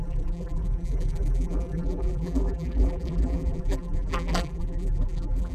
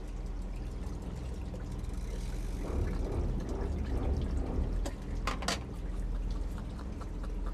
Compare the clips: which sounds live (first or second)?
second